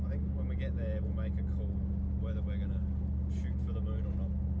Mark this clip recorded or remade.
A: recorded